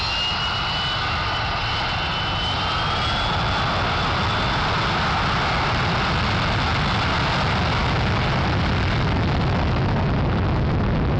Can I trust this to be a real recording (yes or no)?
yes